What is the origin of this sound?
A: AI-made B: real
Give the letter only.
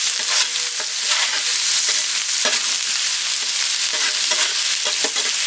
B